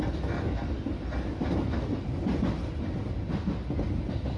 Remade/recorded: recorded